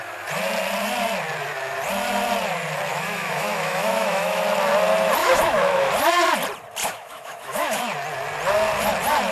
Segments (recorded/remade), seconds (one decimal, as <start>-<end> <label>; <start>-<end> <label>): 0.0-2.9 recorded; 2.9-4.4 remade; 4.4-5.2 recorded; 5.2-5.9 remade; 5.9-6.8 recorded; 6.8-7.8 remade; 7.8-9.3 recorded